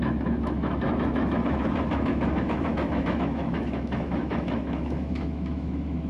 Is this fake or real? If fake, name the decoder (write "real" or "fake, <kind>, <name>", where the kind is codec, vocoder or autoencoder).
fake, autoencoder, DAC-VAE